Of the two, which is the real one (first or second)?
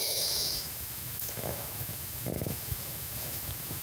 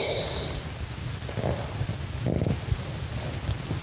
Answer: second